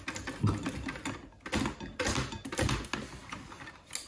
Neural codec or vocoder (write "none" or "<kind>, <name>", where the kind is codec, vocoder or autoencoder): none